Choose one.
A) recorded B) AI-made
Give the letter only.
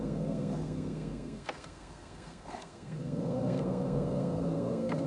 B